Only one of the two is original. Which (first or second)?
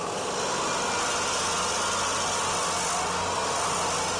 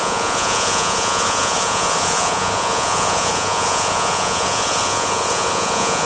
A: first